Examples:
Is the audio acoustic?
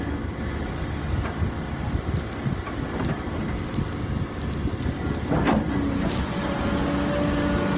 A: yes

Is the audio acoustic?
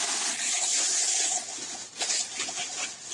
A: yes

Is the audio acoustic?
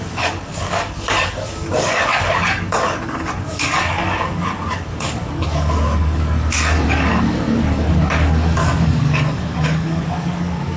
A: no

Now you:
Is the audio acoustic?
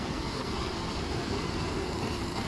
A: no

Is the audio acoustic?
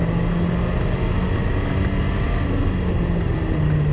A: yes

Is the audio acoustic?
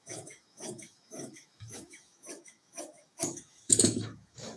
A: no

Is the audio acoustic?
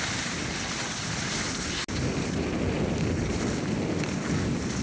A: yes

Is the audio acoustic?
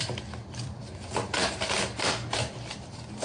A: no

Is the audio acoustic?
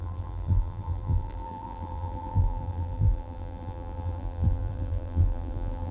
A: no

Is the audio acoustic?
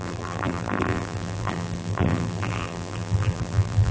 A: no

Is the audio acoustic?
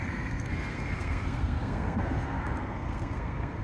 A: no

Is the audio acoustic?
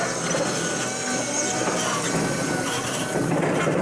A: yes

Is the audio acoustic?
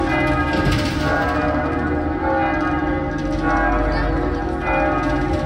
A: yes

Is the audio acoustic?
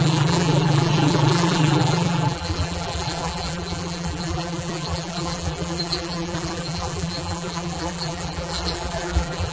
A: no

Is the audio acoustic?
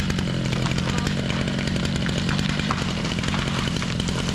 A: yes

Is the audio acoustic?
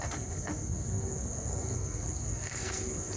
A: no